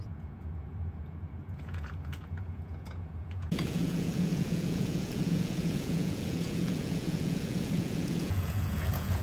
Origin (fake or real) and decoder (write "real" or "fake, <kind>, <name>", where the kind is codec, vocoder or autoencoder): fake, vocoder, Vocos